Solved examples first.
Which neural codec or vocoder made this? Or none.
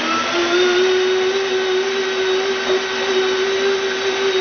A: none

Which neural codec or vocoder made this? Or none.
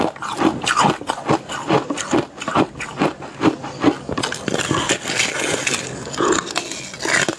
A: none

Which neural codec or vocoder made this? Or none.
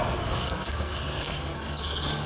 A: codec, SNAC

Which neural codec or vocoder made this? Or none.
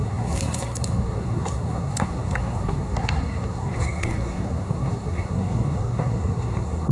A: codec, SNAC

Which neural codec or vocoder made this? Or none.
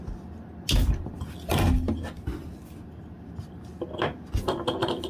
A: none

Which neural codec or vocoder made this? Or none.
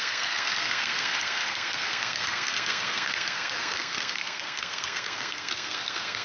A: codec, SNAC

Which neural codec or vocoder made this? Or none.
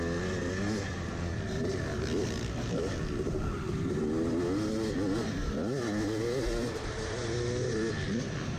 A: none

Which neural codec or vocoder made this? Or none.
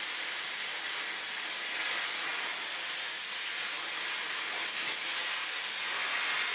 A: none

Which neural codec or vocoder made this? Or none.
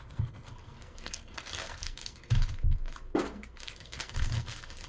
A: codec, SNAC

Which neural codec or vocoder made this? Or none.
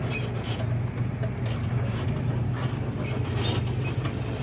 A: none